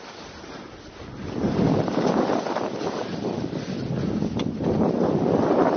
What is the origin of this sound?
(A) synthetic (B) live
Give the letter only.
B